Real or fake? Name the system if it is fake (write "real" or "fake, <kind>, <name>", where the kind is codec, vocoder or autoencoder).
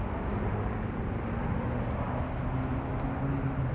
real